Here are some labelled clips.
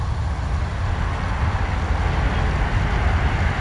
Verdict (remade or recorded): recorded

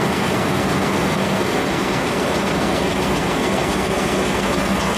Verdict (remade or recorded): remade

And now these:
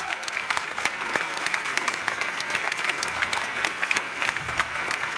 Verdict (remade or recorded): remade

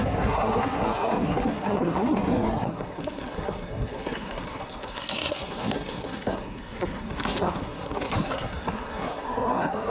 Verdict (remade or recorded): remade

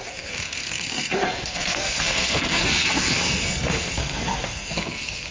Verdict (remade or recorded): remade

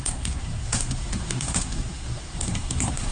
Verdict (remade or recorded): remade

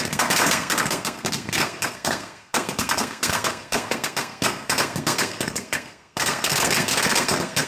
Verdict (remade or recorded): remade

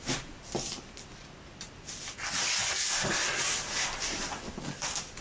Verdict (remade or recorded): recorded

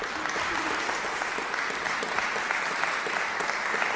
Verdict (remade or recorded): recorded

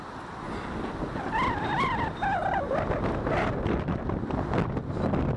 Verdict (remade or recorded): recorded